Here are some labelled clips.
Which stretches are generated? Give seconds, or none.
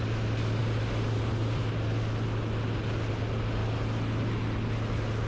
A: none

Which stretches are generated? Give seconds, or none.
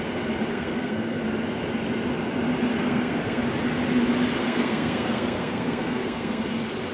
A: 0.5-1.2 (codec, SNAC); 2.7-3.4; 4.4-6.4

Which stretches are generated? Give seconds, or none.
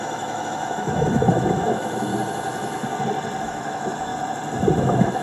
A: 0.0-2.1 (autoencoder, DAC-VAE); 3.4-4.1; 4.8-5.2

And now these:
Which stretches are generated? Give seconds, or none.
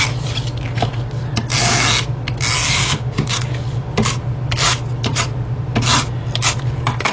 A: 2.8-3.5 (codec, DAC)